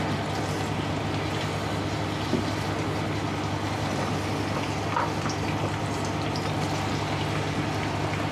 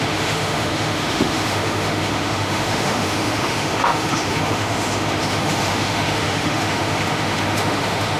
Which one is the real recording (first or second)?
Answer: first